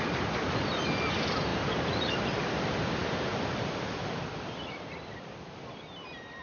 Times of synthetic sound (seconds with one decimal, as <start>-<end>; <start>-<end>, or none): 1.5-2.3